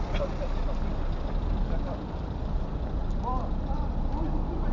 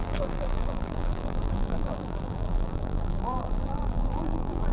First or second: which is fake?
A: second